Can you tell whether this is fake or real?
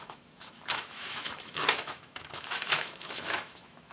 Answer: fake